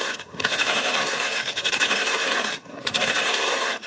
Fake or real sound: fake